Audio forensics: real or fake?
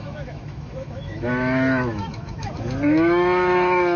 fake